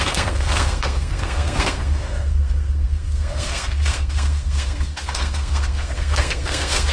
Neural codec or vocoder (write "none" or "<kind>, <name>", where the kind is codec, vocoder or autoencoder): codec, SNAC